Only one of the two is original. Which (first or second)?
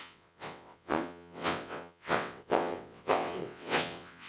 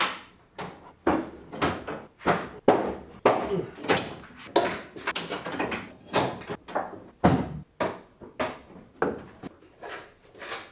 second